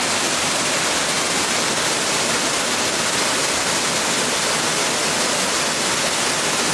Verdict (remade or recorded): recorded